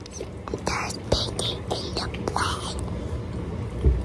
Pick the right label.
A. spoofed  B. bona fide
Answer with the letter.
B